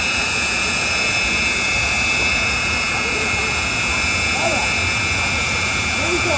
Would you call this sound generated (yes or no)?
yes